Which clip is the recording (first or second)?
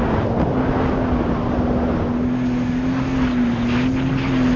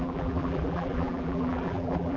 first